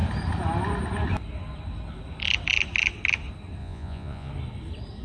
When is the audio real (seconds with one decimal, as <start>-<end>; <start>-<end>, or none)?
0.0-3.6; 4.3-5.0